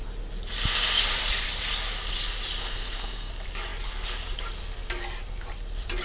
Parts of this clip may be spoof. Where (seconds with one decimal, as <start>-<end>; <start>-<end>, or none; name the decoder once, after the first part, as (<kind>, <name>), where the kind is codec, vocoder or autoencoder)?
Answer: 2.6-3.3 (codec, SNAC)